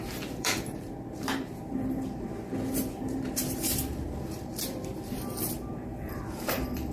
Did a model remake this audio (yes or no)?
yes